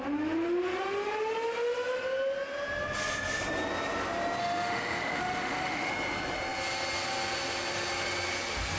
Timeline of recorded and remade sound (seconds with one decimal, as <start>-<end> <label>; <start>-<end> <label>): 0.0-4.4 recorded; 4.4-5.9 remade; 5.9-8.8 recorded